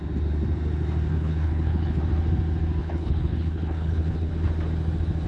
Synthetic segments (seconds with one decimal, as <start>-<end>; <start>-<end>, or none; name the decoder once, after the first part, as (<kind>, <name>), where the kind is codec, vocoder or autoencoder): 1.1-2.0 (codec, HILCodec); 2.8-4.3